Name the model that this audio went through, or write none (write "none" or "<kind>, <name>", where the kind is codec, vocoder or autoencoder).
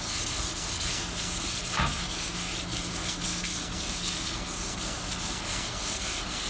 codec, SNAC